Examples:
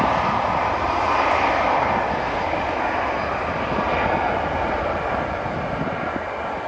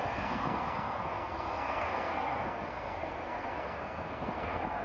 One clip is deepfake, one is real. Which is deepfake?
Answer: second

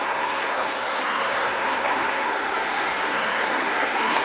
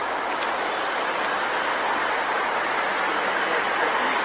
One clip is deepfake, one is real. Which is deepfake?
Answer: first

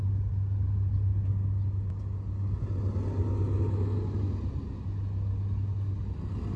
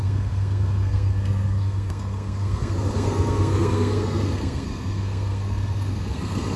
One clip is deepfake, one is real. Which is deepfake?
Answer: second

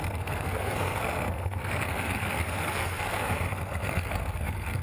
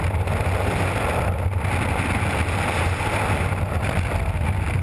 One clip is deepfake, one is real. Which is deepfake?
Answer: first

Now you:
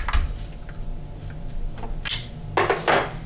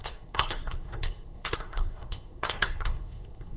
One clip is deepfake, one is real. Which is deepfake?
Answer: second